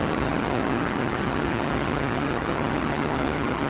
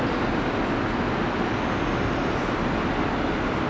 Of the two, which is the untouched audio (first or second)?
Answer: second